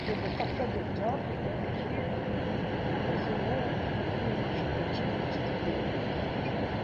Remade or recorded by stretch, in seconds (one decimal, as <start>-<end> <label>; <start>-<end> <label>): 0.0-6.8 recorded